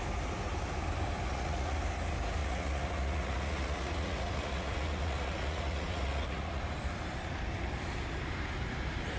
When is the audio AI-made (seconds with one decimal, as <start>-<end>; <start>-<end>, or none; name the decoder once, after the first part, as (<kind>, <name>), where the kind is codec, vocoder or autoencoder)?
1.3-1.8 (vocoder, Vocos); 2.4-6.6